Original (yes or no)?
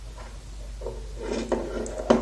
yes